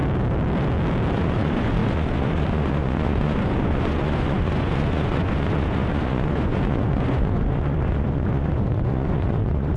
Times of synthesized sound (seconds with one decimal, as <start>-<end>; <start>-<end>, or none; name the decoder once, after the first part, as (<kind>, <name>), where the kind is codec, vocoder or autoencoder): 1.1-9.8 (vocoder, Vocos)